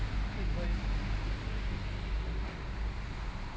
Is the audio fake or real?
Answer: real